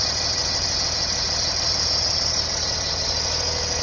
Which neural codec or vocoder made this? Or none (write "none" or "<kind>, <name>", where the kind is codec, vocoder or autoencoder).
none